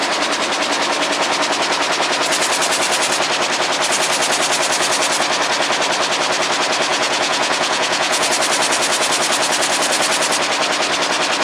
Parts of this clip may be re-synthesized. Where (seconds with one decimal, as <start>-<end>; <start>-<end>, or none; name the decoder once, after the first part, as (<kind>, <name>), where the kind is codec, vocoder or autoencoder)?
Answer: 6.9-8.3 (vocoder, Vocos)

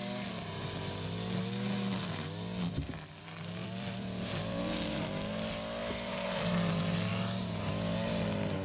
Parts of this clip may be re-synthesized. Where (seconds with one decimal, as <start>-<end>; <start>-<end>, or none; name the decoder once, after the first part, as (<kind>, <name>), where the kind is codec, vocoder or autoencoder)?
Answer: 3.6-4.6 (vocoder, BigVGAN v2); 5.8-6.5

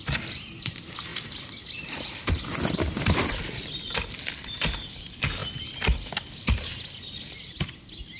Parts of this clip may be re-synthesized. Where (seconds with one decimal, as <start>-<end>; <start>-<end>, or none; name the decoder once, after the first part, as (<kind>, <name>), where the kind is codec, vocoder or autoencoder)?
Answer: 1.1-4.9 (vocoder, BigVGAN v2)

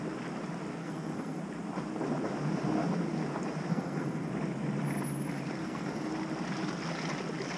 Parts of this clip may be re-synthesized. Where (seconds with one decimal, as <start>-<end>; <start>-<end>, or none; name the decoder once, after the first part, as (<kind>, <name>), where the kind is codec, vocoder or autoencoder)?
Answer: 0.8-1.4 (codec, SNAC); 3.7-4.3; 5.6-6.1

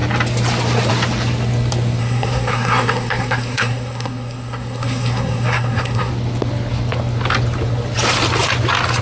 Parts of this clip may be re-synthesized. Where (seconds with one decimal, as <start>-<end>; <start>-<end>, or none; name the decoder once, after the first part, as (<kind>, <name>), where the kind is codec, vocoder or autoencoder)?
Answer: 2.0-6.1 (codec, SNAC)